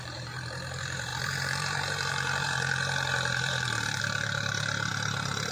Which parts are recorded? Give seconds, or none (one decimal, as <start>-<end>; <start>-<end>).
none